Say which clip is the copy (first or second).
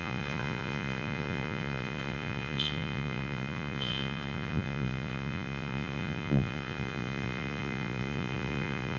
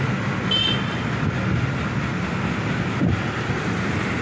first